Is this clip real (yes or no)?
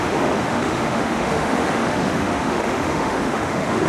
no